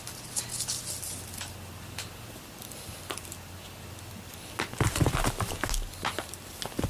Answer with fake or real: real